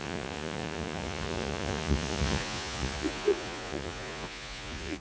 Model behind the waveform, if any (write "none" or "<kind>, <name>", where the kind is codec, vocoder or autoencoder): vocoder, Vocos